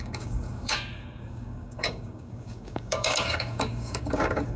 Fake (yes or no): yes